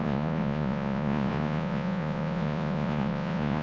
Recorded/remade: remade